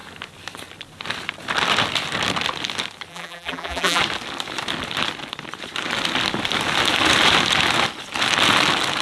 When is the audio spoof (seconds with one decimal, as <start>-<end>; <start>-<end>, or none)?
3.1-4.0